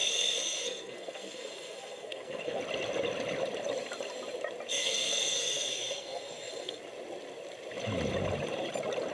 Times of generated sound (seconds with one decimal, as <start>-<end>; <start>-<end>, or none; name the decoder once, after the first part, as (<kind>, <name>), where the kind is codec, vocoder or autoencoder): 0.0-2.6 (codec, SNAC); 4.8-6.8